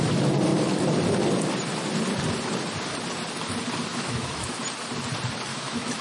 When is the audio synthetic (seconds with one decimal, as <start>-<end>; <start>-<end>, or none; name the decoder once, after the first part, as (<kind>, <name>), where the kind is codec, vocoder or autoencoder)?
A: 3.9-4.6 (autoencoder, DAC-VAE); 5.5-6.0